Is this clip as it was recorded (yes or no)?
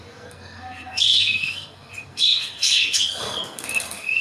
no